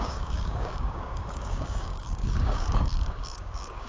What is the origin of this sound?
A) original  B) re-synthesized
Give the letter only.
B